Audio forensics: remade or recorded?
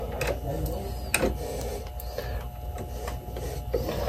recorded